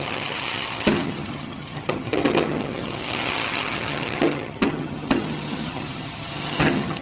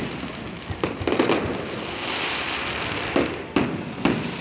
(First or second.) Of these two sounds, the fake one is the first